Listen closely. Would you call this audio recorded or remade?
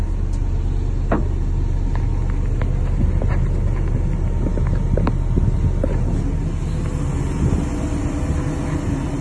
recorded